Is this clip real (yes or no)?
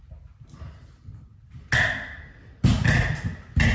yes